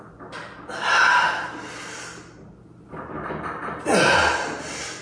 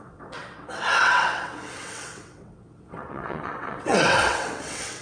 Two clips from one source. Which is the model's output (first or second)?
second